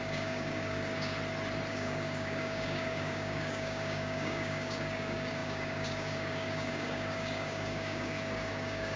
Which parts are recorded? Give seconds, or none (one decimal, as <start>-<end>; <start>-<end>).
1.1-1.7